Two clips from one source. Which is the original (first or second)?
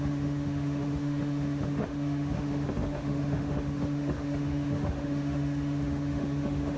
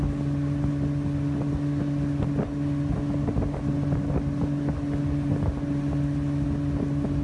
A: second